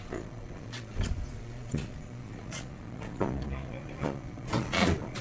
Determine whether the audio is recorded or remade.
remade